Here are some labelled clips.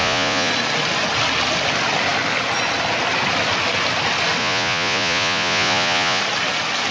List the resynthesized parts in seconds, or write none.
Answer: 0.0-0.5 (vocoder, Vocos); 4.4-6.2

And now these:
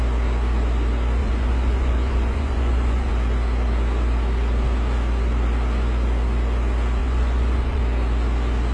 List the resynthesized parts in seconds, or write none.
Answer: 1.2-3.1 (vocoder, Vocos); 7.0-7.8

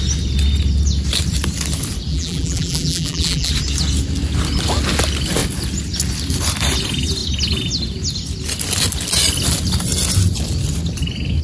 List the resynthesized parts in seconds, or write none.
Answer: 2.1-3.5 (vocoder, BigVGAN v2)

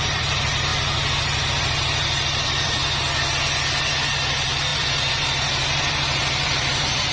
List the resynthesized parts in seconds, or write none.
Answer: 0.0-0.7 (vocoder, BigVGAN v2); 1.6-2.8; 3.8-7.1